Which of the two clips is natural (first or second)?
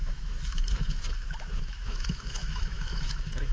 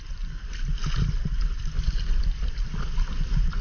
second